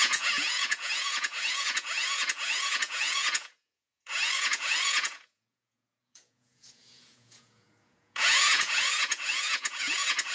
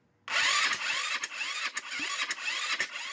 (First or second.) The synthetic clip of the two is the first